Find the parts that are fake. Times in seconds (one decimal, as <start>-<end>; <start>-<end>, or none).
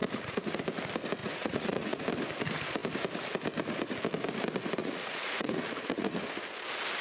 0.0-0.6; 1.2-2.0; 4.8-6.2